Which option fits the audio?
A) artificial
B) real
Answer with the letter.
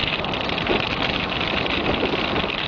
B